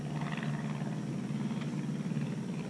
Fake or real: real